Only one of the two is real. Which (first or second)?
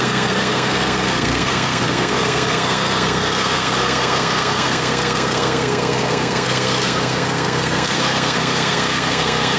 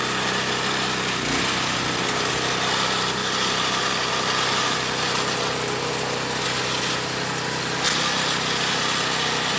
second